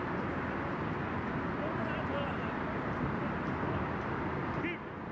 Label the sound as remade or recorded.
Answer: recorded